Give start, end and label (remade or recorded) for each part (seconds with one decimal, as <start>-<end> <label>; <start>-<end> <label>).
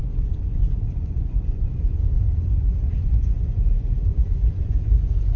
0.0-5.4 remade